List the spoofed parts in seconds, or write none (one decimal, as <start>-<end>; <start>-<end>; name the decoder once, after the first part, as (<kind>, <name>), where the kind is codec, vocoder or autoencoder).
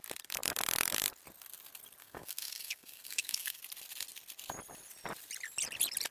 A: 2.0-3.6 (codec, SNAC)